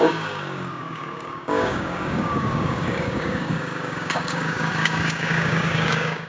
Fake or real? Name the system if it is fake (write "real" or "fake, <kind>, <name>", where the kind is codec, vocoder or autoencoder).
fake, codec, DAC